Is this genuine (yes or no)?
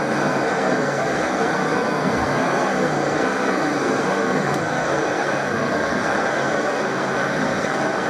no